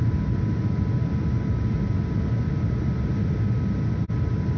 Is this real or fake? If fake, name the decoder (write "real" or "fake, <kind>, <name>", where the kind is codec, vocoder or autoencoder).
real